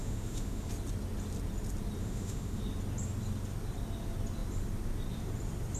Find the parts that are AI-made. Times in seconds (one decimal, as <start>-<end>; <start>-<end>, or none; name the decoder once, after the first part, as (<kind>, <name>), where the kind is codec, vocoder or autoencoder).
0.0-0.7 (autoencoder, DAC-VAE); 2.0-2.6